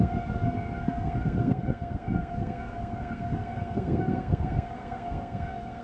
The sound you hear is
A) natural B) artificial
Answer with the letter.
B